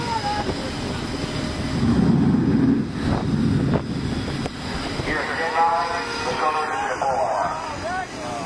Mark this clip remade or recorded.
recorded